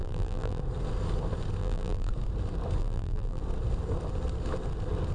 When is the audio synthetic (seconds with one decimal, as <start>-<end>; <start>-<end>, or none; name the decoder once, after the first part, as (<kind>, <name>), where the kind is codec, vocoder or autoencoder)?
0.0-0.6 (vocoder, BigVGAN v2); 1.6-2.1; 2.8-3.4